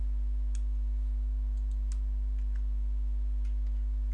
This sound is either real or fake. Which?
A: real